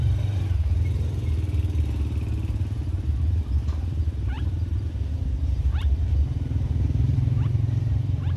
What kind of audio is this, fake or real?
fake